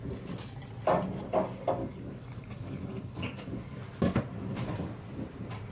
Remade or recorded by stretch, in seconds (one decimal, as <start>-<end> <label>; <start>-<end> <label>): 0.0-1.8 recorded; 1.8-3.8 remade; 3.8-5.7 recorded